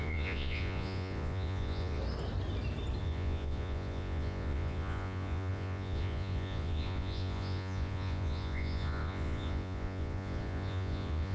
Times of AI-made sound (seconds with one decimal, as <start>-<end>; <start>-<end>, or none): 0.0-2.0; 3.0-11.3